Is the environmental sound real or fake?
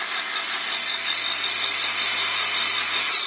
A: real